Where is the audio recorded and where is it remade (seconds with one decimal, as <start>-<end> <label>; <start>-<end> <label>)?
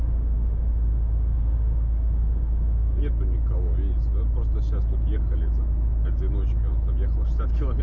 0.0-3.0 remade; 3.0-7.8 recorded